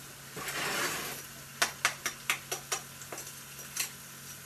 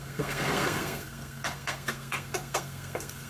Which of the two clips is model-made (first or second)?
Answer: second